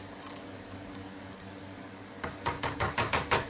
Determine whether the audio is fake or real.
fake